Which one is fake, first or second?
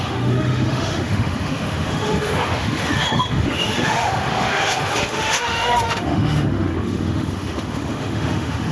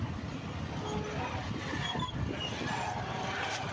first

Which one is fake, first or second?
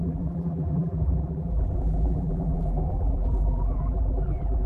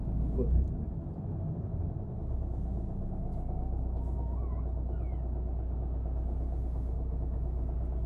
first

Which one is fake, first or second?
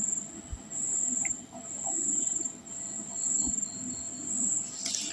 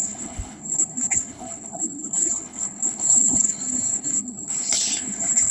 second